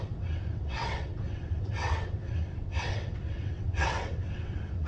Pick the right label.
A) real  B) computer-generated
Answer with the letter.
B